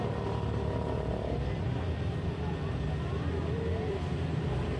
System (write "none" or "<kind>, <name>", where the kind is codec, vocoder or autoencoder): none